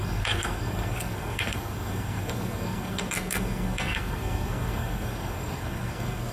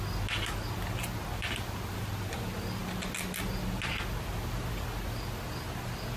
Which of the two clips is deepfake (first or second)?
first